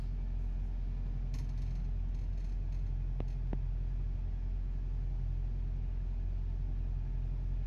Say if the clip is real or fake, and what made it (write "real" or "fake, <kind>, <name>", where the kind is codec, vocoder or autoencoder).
real